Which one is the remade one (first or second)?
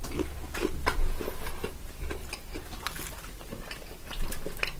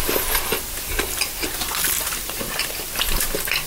second